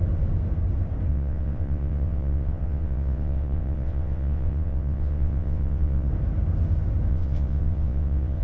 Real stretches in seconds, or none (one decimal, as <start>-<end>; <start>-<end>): 0.0-1.1; 6.1-7.1